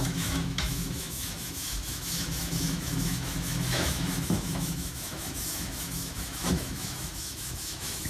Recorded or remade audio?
remade